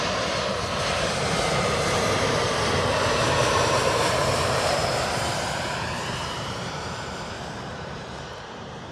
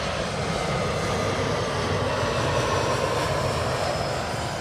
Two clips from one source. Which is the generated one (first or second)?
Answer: first